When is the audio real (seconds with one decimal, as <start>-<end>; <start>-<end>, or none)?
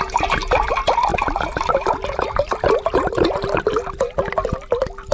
0.0-5.1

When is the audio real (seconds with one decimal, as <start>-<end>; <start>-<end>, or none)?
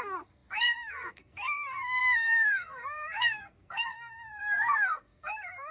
none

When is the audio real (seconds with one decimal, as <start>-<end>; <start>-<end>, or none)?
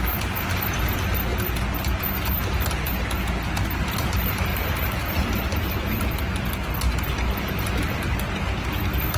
0.0-4.5; 6.2-9.2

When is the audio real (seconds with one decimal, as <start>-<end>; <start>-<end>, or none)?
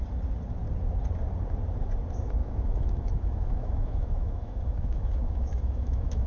0.0-2.4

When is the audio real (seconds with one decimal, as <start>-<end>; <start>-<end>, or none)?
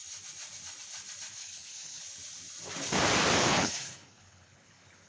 0.0-1.4; 2.0-3.5